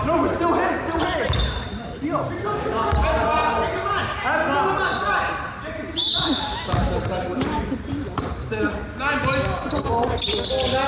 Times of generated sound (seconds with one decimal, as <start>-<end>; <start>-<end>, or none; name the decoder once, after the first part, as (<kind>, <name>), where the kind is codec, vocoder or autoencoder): 0.0-3.4 (vocoder, BigVGAN v2); 5.9-8.8; 10.5-10.9